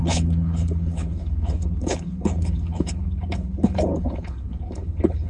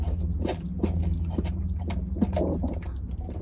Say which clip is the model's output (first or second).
first